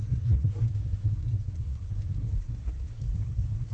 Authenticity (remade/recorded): remade